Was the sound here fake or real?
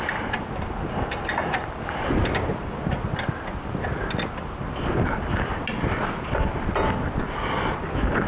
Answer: real